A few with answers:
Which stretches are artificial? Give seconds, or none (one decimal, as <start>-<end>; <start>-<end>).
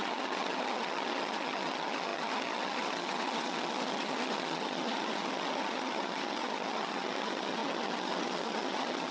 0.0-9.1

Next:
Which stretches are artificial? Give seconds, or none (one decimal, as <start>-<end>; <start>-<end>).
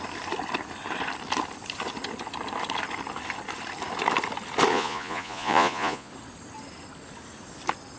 4.7-6.1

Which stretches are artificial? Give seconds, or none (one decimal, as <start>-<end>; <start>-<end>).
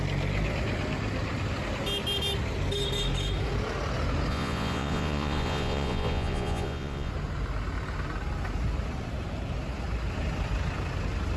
4.3-7.1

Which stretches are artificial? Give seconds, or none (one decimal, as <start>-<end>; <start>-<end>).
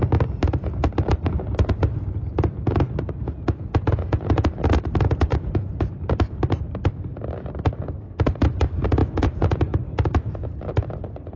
3.2-4.5; 5.3-5.9; 9.0-9.6